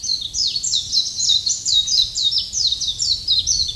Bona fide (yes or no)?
no